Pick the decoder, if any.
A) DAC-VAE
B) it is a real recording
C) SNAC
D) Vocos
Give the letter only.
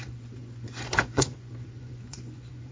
D